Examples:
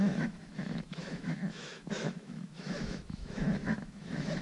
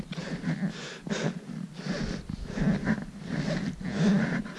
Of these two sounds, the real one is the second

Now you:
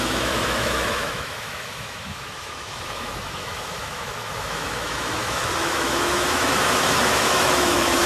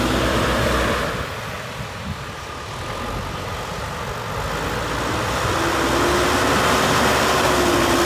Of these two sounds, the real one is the second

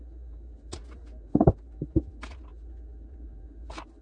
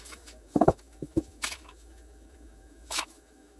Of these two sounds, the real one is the first